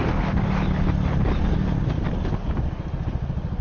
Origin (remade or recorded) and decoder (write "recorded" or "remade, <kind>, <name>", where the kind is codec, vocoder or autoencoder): recorded